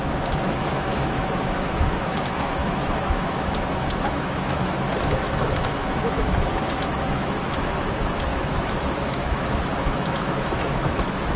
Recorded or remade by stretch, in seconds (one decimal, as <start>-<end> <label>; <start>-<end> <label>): 0.0-11.4 remade